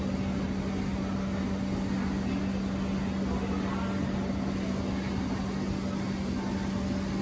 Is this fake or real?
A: real